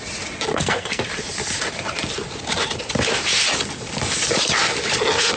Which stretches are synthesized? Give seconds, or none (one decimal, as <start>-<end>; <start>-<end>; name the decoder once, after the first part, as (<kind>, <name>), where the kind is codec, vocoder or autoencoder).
0.5-1.0 (codec, SNAC)